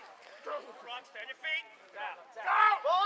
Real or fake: real